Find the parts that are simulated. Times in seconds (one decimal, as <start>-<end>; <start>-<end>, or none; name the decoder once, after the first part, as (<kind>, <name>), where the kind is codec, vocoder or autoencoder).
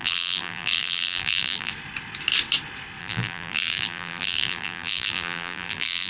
0.0-1.7 (vocoder, BigVGAN v2); 3.0-6.1